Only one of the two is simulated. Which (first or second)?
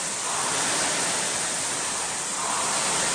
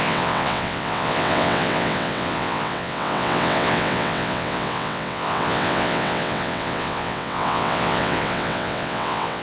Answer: second